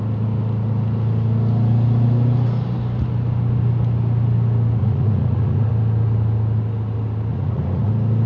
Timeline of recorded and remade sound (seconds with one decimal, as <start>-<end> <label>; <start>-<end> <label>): 0.0-4.8 recorded; 4.8-5.7 remade; 5.7-7.3 recorded; 7.3-7.9 remade; 7.9-8.3 recorded

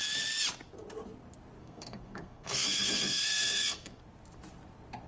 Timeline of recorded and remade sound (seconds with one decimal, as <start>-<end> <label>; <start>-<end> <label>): 0.0-1.6 recorded; 1.6-4.0 remade; 4.0-5.1 recorded

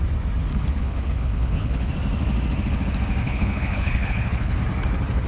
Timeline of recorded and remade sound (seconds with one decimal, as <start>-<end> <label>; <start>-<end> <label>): 0.0-0.5 recorded; 0.5-1.9 remade; 1.9-3.2 recorded; 3.2-4.6 remade; 4.6-5.3 recorded

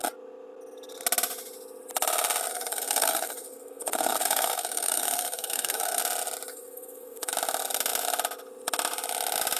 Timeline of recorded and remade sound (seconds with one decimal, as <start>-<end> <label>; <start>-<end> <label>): 0.0-2.5 recorded; 2.5-6.0 remade; 6.0-6.5 recorded; 6.5-7.3 remade; 7.3-9.6 recorded

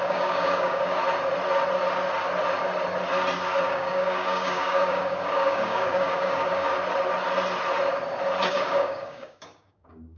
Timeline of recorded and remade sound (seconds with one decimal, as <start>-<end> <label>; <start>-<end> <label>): 0.0-1.0 remade; 1.0-3.7 recorded; 3.7-6.7 remade; 6.7-8.5 recorded; 8.5-10.2 remade

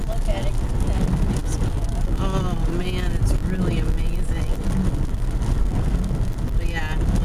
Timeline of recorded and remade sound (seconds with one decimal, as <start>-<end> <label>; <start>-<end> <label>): 0.0-5.6 recorded; 5.6-6.1 remade; 6.1-7.2 recorded

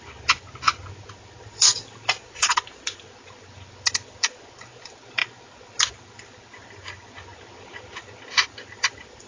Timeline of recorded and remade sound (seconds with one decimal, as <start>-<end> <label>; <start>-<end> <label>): 0.0-9.3 remade

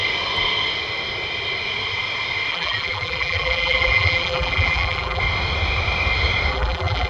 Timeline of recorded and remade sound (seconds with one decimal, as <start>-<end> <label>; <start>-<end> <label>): 0.0-2.5 recorded; 2.5-5.2 remade; 5.2-6.5 recorded; 6.5-7.1 remade